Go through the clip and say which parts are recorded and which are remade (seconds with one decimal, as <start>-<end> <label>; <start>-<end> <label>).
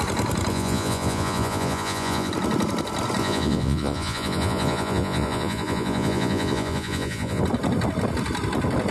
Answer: 0.0-0.5 recorded; 0.5-2.3 remade; 2.3-3.2 recorded; 3.2-7.4 remade; 7.4-8.9 recorded